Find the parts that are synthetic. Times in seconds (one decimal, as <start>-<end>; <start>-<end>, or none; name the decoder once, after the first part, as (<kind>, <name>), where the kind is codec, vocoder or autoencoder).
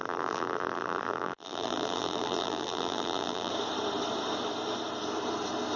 0.0-3.5 (vocoder, BigVGAN v2)